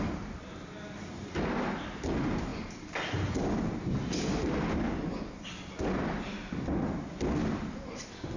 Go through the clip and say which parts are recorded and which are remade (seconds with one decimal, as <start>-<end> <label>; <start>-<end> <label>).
0.0-8.4 recorded